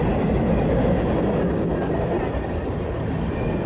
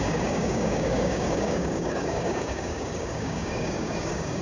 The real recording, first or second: first